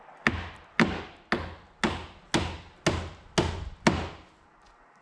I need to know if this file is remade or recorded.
recorded